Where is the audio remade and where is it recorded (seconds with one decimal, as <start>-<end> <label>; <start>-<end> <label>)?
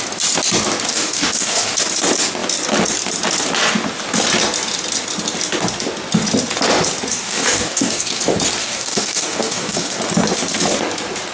0.0-0.9 recorded; 0.9-1.8 remade; 1.8-7.1 recorded; 7.1-8.2 remade; 8.2-8.6 recorded; 8.6-10.0 remade; 10.0-11.3 recorded